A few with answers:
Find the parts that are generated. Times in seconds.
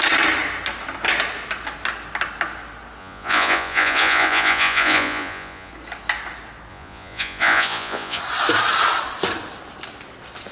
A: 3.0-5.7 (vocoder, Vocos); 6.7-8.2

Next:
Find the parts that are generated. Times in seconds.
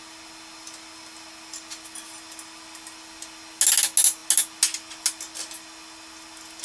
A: none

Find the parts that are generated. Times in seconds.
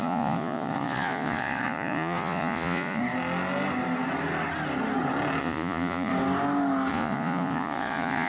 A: 0.0-3.0 (vocoder, Vocos); 5.4-6.1; 6.9-8.3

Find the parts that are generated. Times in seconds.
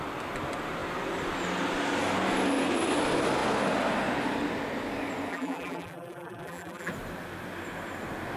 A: 5.3-6.9 (vocoder, BigVGAN v2)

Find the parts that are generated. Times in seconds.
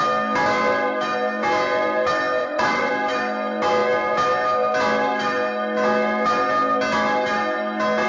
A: 2.4-2.9 (vocoder, WaveNeXt)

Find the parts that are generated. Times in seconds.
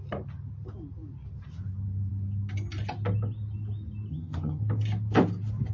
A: 4.1-4.6 (vocoder, HiFi-GAN)